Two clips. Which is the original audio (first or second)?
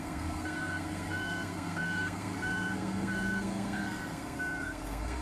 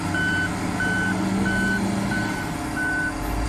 second